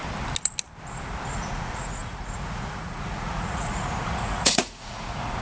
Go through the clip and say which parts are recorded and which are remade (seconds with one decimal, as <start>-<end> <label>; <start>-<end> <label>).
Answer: 0.0-1.3 recorded; 1.3-5.4 remade